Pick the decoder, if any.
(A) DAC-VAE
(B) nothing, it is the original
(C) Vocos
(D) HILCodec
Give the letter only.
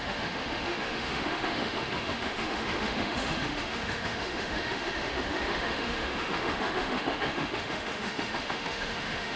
A